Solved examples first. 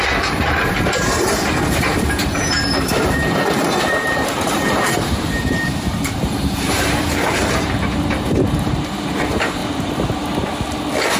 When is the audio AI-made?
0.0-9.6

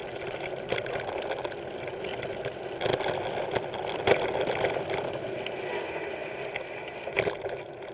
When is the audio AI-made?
none

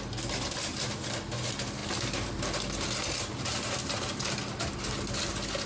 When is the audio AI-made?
none

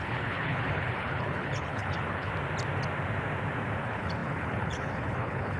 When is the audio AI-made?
0.0-2.3; 3.8-5.6

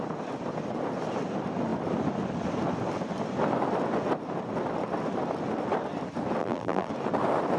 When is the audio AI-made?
6.4-6.9

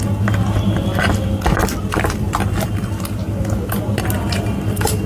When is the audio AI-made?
1.6-3.2

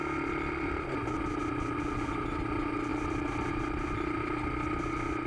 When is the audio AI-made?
2.9-3.5